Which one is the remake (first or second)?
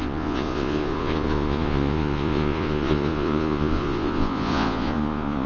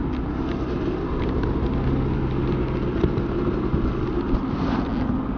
first